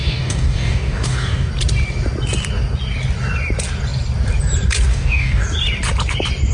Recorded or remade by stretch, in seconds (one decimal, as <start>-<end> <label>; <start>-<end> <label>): 0.0-1.5 remade; 1.5-4.9 recorded; 4.9-5.4 remade; 5.4-6.5 recorded